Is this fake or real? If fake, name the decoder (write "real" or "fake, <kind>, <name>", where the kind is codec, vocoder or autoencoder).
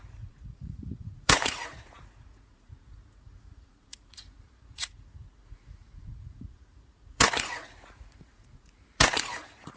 fake, vocoder, Vocos